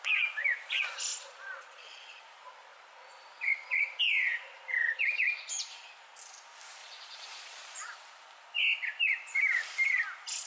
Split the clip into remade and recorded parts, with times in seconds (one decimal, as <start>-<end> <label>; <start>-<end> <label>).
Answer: 0.0-1.1 recorded; 1.1-2.2 remade; 2.2-6.8 recorded; 6.8-7.9 remade; 7.9-10.5 recorded